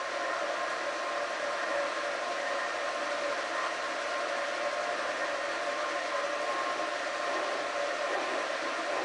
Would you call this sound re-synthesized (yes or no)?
no